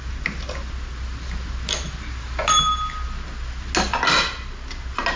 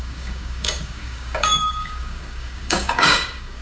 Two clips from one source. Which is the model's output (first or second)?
second